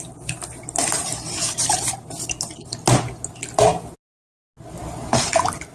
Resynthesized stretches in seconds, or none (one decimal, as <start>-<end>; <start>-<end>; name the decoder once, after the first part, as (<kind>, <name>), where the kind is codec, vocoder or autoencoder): none